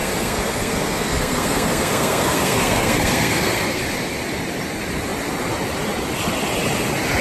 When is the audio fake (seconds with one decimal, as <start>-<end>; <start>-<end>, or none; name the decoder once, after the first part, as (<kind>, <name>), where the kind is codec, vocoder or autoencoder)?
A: 0.0-3.8 (codec, SNAC)